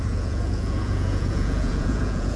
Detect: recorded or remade remade